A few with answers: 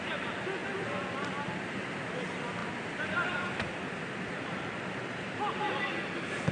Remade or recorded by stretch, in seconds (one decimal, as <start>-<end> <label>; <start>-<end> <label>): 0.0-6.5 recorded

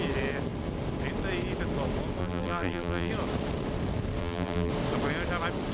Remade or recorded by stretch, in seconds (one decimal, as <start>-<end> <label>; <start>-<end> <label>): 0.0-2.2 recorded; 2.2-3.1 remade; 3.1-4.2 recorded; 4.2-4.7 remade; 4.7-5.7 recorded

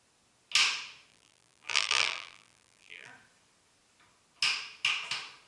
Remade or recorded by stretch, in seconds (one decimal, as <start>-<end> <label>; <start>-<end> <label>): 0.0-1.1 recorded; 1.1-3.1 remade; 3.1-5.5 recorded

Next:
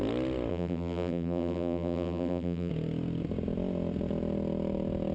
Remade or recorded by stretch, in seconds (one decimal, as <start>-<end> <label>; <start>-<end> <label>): 0.0-0.5 recorded; 0.5-2.7 remade; 2.7-5.1 recorded

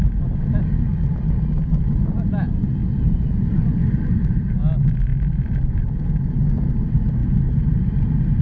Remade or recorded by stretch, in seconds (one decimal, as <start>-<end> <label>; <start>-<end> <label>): 0.0-2.8 recorded; 2.8-3.8 remade; 3.8-5.1 recorded; 5.1-6.2 remade; 6.2-8.4 recorded